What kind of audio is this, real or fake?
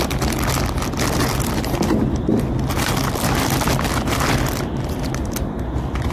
real